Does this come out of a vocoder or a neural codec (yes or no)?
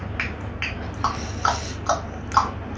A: no